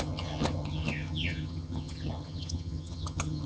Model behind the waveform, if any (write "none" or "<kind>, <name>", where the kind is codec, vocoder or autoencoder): vocoder, HiFi-GAN